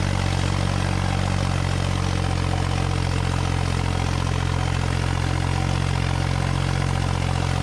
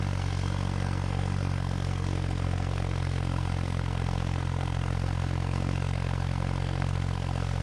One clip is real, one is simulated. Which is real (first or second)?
first